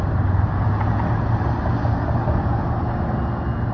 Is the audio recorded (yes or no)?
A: yes